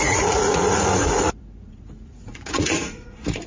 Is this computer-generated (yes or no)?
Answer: yes